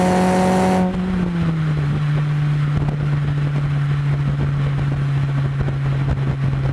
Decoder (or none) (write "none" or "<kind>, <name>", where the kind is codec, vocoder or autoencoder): none